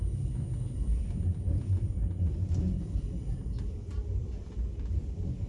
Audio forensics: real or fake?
fake